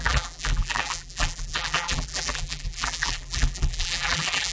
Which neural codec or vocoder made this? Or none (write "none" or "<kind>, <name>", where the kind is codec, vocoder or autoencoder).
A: vocoder, BigVGAN v2